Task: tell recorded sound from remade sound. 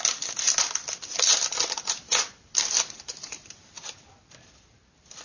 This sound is recorded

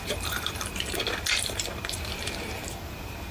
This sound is remade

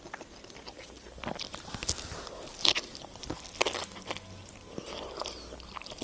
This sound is recorded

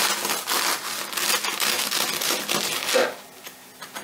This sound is recorded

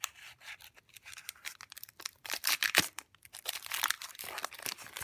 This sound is remade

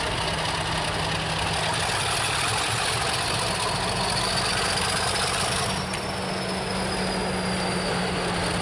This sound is recorded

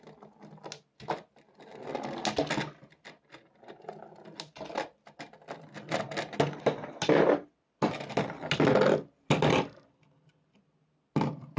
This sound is recorded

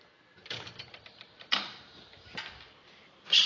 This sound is remade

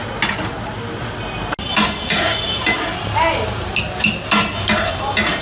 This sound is recorded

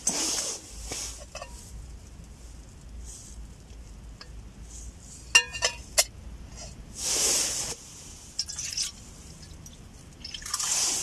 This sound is recorded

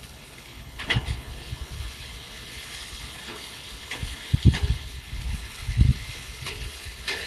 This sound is remade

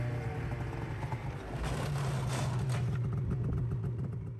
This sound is recorded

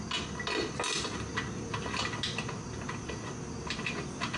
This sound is recorded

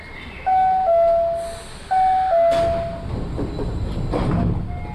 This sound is recorded